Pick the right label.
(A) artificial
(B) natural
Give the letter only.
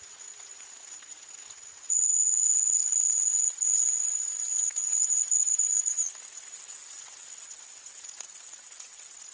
A